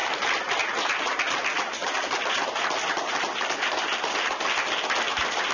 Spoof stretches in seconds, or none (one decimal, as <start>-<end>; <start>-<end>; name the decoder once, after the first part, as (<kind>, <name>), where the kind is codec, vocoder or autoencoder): none